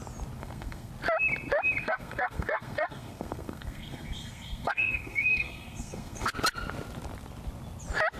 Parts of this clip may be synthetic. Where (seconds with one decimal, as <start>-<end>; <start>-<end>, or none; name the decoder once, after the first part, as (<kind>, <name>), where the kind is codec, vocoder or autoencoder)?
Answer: 0.4-0.9 (codec, SNAC); 1.8-6.3